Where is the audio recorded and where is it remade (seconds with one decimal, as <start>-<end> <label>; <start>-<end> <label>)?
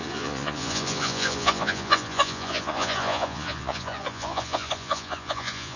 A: 0.0-5.8 remade